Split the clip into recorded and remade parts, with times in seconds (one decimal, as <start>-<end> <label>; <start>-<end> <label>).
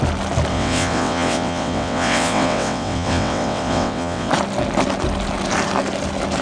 0.0-0.5 recorded; 0.5-4.3 remade; 4.3-6.4 recorded